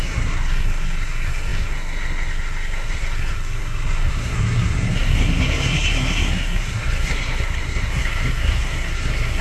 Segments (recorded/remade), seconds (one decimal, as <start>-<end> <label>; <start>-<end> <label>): 0.0-9.4 remade